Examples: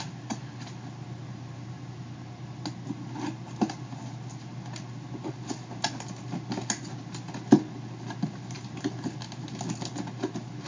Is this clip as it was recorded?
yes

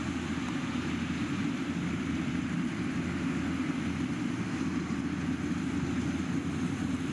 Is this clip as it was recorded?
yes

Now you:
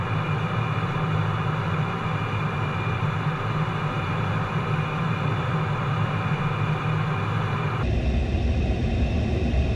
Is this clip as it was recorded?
yes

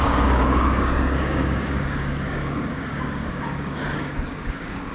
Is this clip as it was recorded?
no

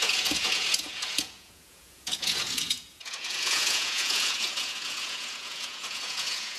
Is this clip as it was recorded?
no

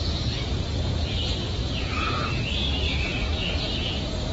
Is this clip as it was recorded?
no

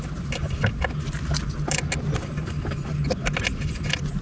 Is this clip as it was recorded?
yes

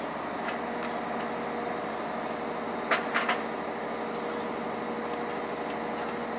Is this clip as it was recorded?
yes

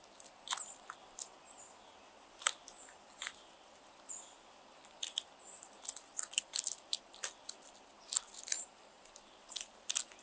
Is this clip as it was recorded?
yes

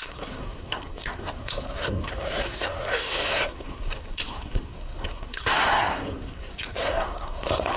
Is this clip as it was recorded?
no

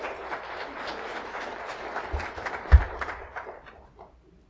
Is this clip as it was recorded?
no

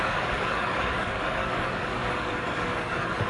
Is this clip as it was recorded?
no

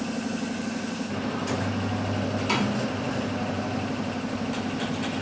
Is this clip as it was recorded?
yes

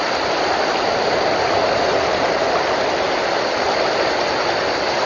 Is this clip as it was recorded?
yes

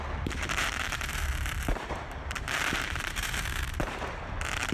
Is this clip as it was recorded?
no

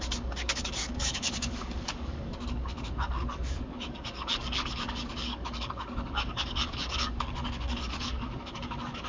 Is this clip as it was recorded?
no